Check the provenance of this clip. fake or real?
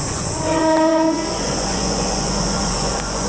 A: fake